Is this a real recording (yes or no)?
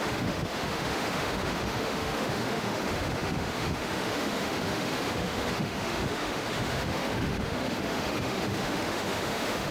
no